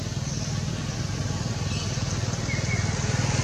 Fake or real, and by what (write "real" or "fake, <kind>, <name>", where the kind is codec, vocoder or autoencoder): real